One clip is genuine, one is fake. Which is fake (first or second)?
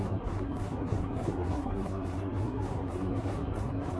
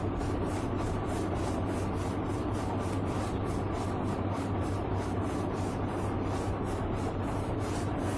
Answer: first